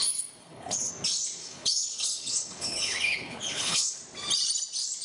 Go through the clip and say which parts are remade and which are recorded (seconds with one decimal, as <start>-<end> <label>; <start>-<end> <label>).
0.0-0.4 recorded; 0.4-0.9 remade; 0.9-1.4 recorded; 1.4-4.0 remade; 4.0-5.0 recorded